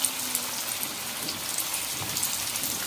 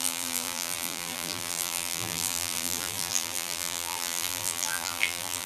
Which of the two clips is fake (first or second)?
second